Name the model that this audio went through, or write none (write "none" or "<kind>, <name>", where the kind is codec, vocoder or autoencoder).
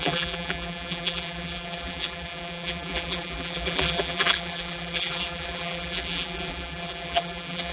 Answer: vocoder, BigVGAN v2